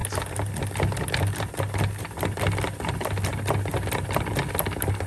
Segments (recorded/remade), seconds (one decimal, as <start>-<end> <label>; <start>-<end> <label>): 0.0-5.1 recorded